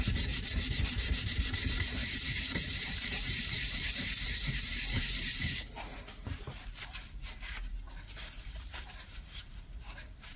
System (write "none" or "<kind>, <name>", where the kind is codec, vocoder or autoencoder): vocoder, BigVGAN v2